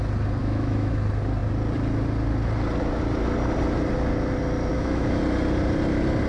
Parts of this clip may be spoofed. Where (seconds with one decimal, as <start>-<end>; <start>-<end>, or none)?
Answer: 0.4-0.9; 4.7-5.2